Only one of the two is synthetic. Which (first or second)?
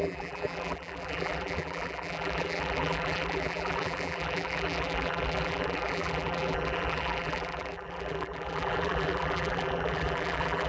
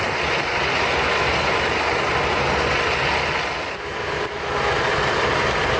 first